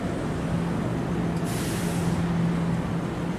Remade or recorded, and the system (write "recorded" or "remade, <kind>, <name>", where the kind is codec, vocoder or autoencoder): recorded